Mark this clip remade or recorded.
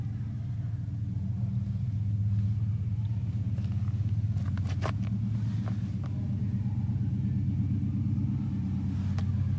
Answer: recorded